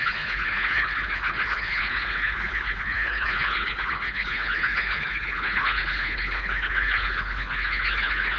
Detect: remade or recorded remade